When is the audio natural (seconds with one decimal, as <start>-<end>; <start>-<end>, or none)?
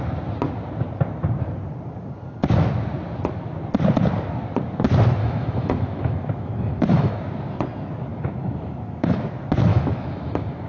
0.0-5.2; 7.2-8.1; 9.2-9.7